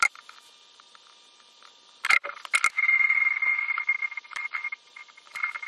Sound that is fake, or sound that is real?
real